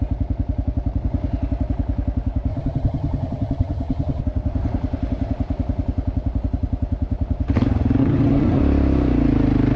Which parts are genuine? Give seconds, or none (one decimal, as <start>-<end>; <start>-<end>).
0.0-2.5; 4.2-8.0; 8.6-9.8

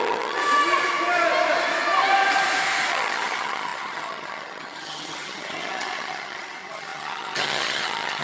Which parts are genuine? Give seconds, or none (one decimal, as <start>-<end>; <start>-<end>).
0.4-2.9

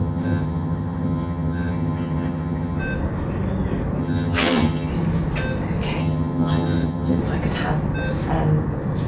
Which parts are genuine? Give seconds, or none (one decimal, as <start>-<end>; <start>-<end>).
2.8-4.0; 4.9-6.0; 7.2-9.1

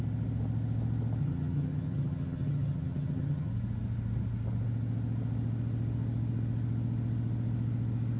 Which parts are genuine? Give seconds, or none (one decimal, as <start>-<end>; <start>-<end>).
0.0-1.2; 3.5-8.2

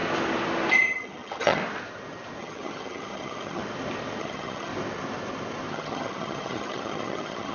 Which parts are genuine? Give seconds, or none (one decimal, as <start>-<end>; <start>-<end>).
0.0-0.7; 1.6-2.4; 3.6-4.2; 4.7-5.7